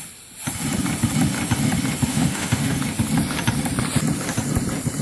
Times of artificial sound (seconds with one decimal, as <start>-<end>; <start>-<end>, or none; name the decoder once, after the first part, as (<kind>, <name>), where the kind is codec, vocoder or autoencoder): 2.1-2.8 (autoencoder, DAC-VAE)